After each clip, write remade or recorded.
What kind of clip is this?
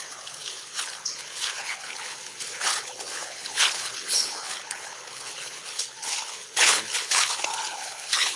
remade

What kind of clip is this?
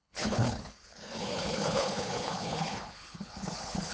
remade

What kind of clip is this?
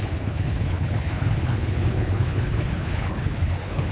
remade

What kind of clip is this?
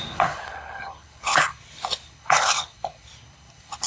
remade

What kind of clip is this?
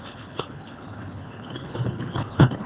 remade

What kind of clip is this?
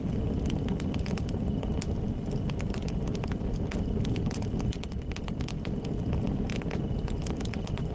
recorded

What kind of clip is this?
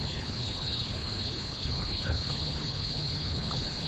remade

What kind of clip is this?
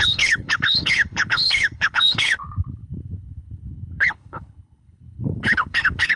remade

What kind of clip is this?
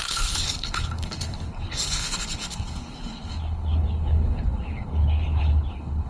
remade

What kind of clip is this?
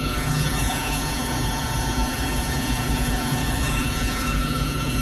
remade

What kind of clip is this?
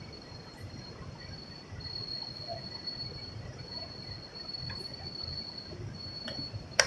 recorded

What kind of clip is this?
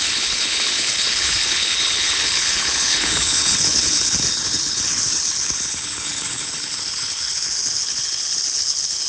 remade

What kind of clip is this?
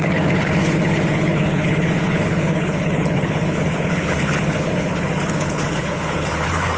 remade